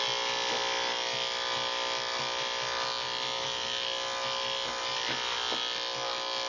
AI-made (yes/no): no